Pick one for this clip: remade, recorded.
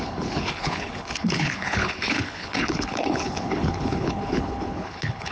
remade